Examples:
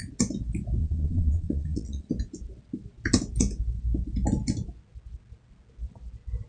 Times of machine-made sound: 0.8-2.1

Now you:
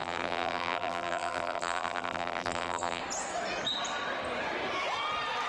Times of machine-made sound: 0.0-3.0